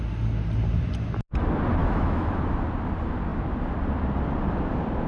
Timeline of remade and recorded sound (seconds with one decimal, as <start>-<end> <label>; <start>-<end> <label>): 0.0-1.8 recorded; 1.8-2.4 remade; 2.4-5.1 recorded